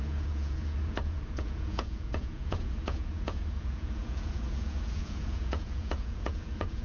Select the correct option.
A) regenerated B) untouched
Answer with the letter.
A